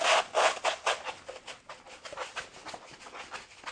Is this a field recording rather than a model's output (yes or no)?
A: yes